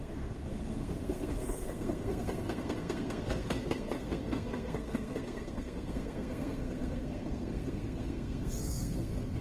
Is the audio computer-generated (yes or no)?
yes